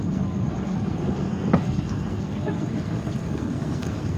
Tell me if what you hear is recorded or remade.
remade